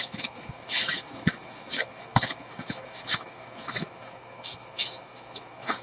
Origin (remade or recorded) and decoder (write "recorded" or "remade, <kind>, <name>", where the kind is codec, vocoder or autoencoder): remade, autoencoder, DAC-VAE